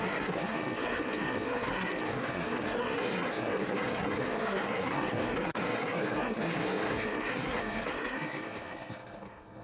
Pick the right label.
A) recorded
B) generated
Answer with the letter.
B